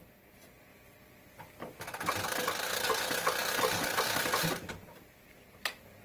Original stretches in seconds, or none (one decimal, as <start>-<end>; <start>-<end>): 0.0-6.0